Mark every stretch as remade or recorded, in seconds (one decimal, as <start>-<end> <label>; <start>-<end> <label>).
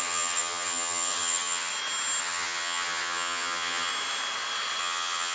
0.0-1.7 remade; 1.7-2.2 recorded; 2.2-3.9 remade; 3.9-4.8 recorded; 4.8-5.3 remade